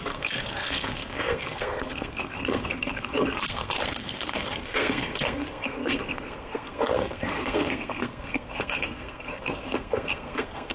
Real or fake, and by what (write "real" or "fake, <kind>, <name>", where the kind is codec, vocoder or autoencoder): fake, codec, SNAC